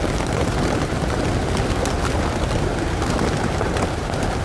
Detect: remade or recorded recorded